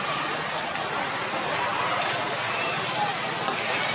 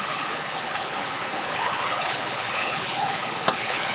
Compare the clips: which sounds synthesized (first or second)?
second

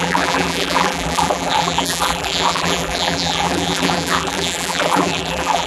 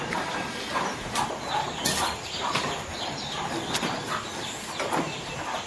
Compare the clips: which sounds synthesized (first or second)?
first